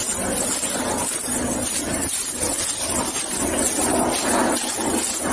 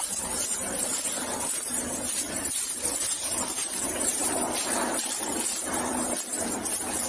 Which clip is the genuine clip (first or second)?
first